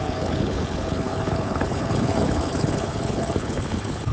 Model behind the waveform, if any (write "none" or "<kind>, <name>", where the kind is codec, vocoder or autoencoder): codec, HILCodec